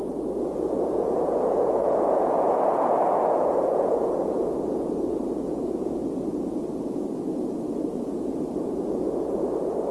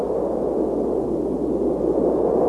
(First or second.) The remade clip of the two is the first